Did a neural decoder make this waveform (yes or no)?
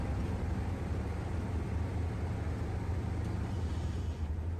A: yes